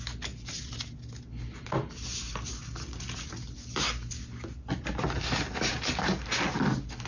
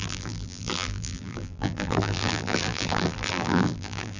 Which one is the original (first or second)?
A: first